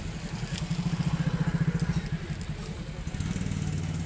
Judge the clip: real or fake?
real